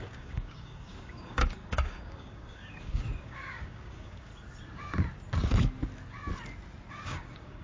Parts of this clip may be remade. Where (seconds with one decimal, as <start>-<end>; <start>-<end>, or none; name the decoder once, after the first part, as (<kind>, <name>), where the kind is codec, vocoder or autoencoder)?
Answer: 0.0-4.3 (codec, DAC); 6.9-7.6